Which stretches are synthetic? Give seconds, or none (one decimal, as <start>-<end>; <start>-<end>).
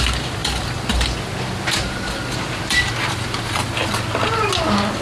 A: none